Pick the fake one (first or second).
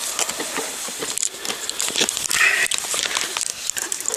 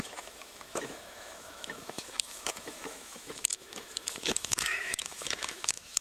second